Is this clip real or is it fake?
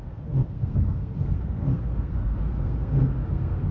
fake